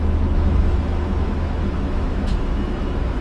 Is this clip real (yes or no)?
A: no